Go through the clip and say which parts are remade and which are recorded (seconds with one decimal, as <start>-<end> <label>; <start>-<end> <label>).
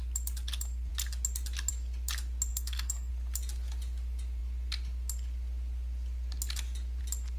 0.0-2.5 recorded; 2.5-3.1 remade; 3.1-7.4 recorded